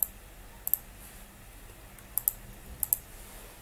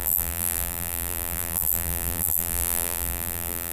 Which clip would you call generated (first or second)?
second